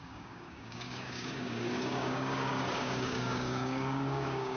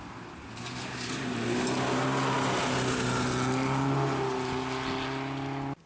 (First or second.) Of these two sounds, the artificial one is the first